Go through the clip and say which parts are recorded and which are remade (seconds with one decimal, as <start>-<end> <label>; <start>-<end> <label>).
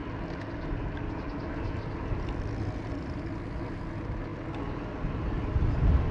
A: 0.0-6.1 recorded